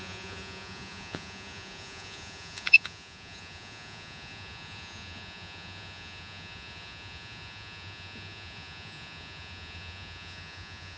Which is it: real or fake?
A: fake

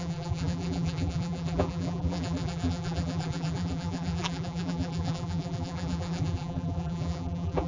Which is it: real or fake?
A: fake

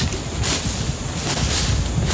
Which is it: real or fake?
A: real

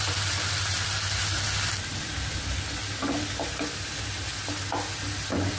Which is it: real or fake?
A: real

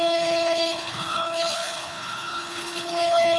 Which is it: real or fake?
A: fake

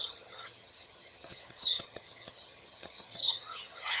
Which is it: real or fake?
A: fake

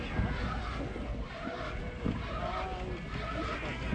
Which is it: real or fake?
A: real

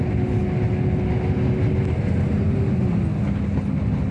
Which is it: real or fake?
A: real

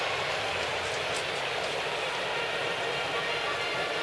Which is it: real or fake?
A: real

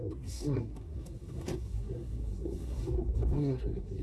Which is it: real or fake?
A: fake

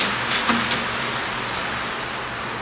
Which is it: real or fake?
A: real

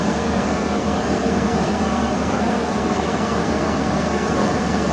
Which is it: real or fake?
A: fake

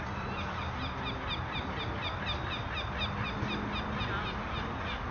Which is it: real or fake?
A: real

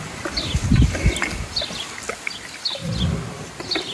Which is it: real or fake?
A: real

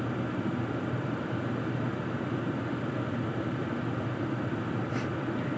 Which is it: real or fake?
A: real